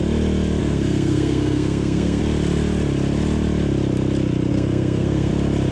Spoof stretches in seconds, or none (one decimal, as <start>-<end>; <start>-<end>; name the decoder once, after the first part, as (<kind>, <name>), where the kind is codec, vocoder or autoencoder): 0.6-2.2 (codec, SNAC); 4.5-5.3